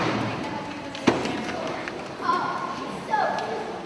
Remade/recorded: remade